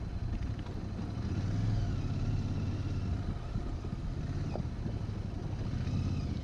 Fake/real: real